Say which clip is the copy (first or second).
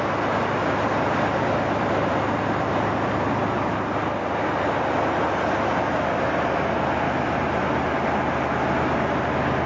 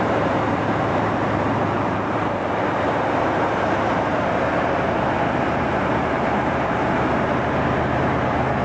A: second